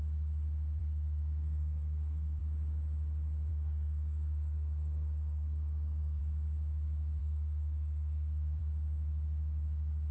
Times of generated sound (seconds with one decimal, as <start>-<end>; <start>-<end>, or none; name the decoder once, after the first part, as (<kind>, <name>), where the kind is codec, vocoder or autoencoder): 0.8-2.4 (codec, SNAC); 3.5-6.2; 7.2-8.6